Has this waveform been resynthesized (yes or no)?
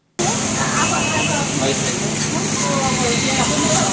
no